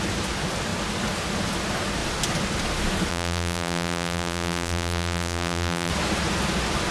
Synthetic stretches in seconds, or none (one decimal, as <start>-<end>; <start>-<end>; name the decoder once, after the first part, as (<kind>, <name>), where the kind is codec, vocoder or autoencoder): 3.1-5.9 (vocoder, BigVGAN v2)